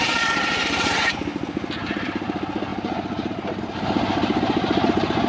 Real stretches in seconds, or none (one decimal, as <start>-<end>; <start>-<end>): 1.3-2.0